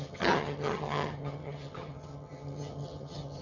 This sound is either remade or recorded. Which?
remade